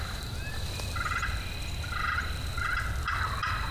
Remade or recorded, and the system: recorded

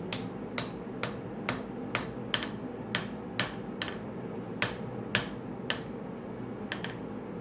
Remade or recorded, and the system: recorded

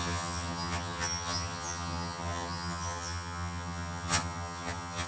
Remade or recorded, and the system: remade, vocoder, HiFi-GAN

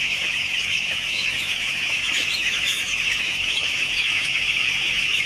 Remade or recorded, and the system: remade, autoencoder, DAC-VAE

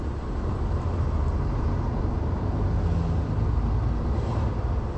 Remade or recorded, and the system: recorded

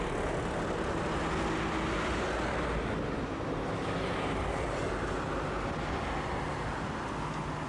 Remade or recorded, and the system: recorded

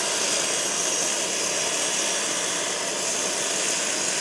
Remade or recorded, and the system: recorded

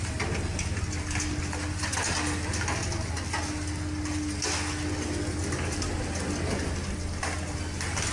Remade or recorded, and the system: recorded